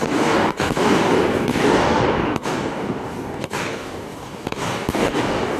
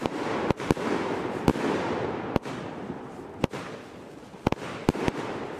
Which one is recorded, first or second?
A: second